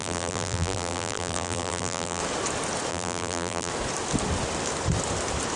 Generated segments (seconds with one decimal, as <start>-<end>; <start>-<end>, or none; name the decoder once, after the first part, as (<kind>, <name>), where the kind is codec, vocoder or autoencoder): 0.0-2.2 (vocoder, BigVGAN v2); 2.9-3.7